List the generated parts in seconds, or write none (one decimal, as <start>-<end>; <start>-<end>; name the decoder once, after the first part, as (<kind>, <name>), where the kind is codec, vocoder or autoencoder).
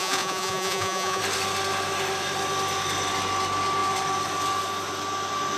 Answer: 0.0-1.2 (vocoder, Vocos)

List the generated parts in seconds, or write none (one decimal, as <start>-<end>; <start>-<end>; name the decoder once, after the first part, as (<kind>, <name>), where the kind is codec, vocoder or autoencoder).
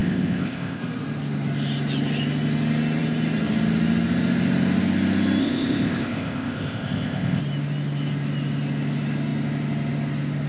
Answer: 0.0-0.8 (codec, ZipCodec); 5.4-7.4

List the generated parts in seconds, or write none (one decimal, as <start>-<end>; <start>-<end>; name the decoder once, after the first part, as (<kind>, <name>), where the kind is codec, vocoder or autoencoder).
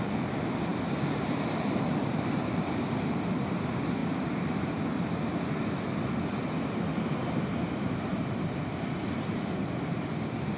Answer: 0.7-2.7 (vocoder, BigVGAN v2); 4.0-6.1; 8.1-9.6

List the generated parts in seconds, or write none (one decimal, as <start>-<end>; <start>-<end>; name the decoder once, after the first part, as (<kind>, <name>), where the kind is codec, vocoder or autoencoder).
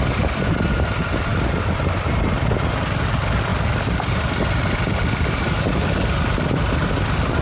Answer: 3.5-5.4 (vocoder, BigVGAN v2)